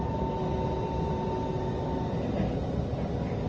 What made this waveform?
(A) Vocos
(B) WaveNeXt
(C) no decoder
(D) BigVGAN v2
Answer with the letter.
C